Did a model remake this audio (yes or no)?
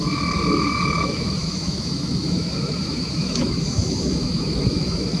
yes